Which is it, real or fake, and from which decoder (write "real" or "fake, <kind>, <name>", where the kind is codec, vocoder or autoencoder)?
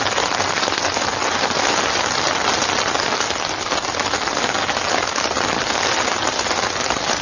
real